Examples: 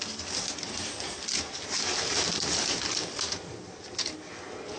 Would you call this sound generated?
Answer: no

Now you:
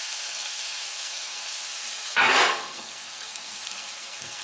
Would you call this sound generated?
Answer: yes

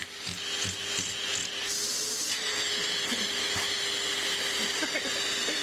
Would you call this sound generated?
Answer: no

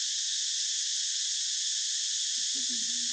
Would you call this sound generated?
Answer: no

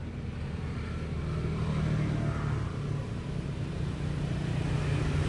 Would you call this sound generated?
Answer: no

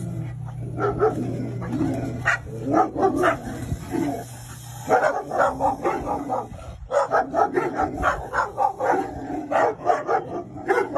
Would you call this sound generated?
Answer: no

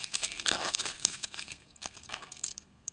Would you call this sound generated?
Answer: yes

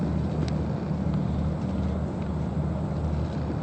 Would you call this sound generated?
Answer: no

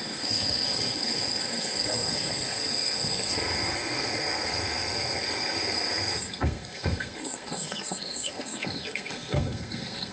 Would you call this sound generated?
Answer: yes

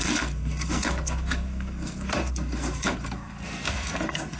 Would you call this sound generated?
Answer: yes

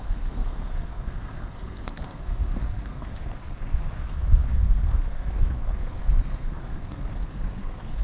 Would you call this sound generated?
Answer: yes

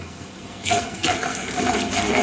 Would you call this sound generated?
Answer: yes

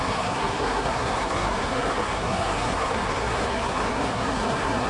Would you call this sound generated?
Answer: yes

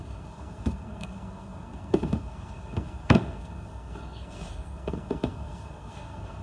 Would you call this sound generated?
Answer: yes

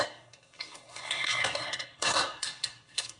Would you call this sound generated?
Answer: yes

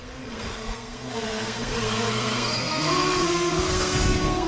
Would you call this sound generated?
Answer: yes